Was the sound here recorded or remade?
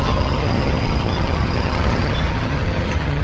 remade